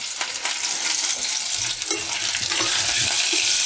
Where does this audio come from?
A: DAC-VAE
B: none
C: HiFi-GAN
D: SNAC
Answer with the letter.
B